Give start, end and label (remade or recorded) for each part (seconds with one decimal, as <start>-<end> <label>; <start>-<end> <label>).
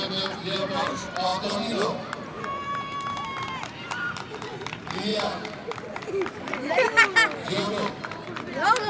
0.0-8.9 recorded